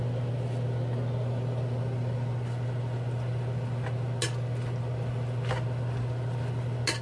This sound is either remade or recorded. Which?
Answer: recorded